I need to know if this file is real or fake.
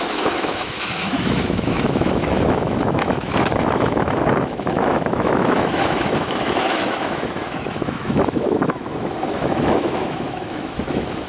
fake